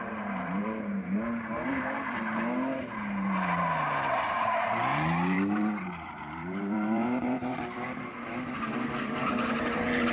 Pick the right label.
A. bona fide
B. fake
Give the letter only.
B